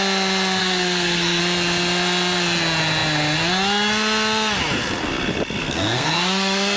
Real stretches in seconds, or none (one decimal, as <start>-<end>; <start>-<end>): 0.0-0.6; 1.4-5.6